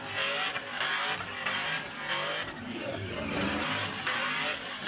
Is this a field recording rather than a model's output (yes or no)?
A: yes